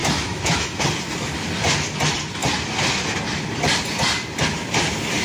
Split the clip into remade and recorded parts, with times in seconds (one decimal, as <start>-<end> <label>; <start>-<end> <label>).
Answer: 0.0-0.8 remade; 0.8-5.2 recorded